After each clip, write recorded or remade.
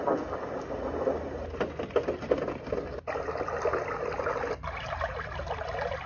recorded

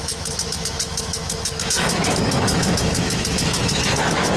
remade